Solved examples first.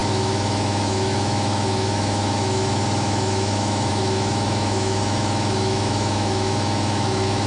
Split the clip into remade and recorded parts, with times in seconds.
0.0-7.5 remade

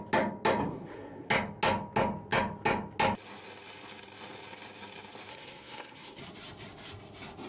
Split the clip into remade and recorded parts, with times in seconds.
0.0-0.6 recorded; 0.6-1.3 remade; 1.3-5.3 recorded; 5.3-6.2 remade; 6.2-7.5 recorded

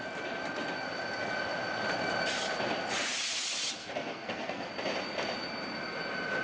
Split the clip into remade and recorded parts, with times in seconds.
0.0-3.8 recorded; 3.8-4.7 remade; 4.7-6.4 recorded

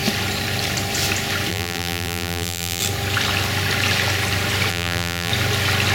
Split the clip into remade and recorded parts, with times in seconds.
0.0-1.5 recorded; 1.5-2.8 remade; 2.8-4.7 recorded; 4.7-5.3 remade; 5.3-5.9 recorded

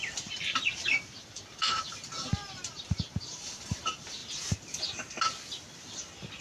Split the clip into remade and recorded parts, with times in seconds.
0.0-4.2 remade; 4.2-6.4 recorded

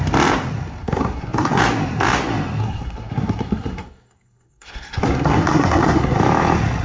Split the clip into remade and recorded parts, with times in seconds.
0.0-0.8 recorded; 0.8-1.6 remade; 1.6-2.6 recorded; 2.6-6.2 remade; 6.2-6.8 recorded